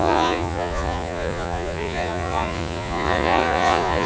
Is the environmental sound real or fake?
fake